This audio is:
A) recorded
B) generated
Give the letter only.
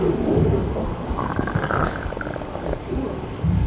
B